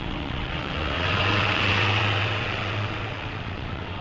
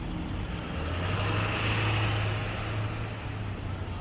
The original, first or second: second